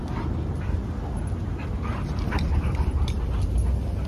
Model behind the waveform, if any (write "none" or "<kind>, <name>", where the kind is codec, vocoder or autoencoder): none